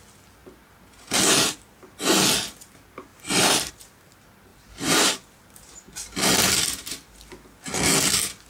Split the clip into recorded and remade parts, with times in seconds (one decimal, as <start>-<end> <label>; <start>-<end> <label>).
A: 0.0-3.1 recorded; 3.1-3.7 remade; 3.7-4.5 recorded; 4.5-5.1 remade; 5.1-8.5 recorded